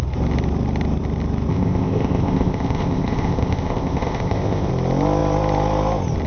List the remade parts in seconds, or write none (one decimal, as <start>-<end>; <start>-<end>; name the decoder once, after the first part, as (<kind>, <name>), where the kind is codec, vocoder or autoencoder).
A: 1.5-4.7 (codec, ZipCodec)